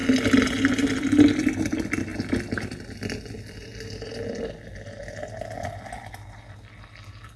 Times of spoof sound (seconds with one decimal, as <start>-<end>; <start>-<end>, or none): none